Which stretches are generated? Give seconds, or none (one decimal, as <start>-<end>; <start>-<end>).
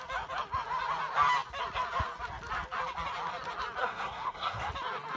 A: 3.8-4.7